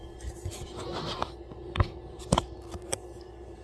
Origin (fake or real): real